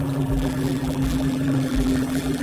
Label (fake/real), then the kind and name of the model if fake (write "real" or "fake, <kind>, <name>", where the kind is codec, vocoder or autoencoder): fake, vocoder, BigVGAN v2